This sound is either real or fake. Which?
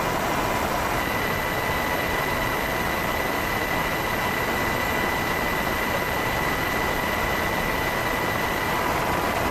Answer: real